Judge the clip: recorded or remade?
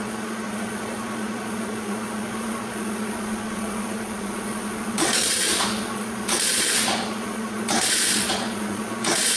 remade